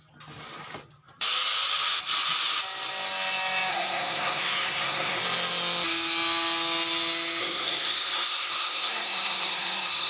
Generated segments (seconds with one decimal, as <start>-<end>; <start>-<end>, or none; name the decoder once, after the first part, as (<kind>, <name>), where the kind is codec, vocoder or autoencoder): 3.7-5.2 (codec, SNAC); 7.4-10.1